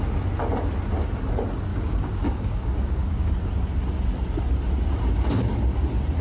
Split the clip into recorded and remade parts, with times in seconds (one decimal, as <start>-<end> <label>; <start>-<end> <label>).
0.0-1.7 recorded; 1.7-3.3 remade; 3.3-6.2 recorded